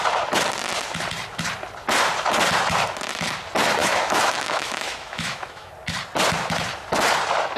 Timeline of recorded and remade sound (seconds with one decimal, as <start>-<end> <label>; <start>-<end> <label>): 0.0-3.8 recorded; 3.8-5.7 remade; 5.7-7.6 recorded